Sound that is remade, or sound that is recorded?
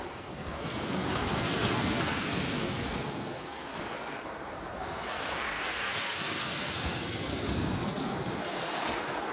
remade